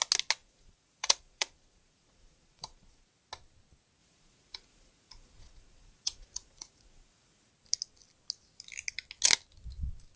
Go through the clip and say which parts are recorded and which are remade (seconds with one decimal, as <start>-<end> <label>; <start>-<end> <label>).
0.0-0.4 recorded; 0.4-3.1 remade; 3.1-4.0 recorded; 4.0-7.5 remade; 7.5-10.2 recorded